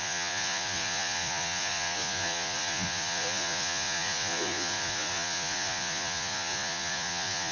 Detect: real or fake fake